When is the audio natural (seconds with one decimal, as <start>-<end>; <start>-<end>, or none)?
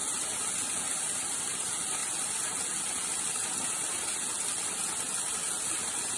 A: 0.0-6.2